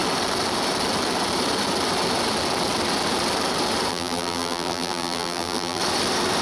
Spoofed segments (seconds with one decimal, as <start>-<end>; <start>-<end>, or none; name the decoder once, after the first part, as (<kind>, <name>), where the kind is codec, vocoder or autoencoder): 3.9-5.8 (vocoder, BigVGAN v2)